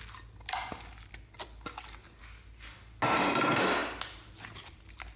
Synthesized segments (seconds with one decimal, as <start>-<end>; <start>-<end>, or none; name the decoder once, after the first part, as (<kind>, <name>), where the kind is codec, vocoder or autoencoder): none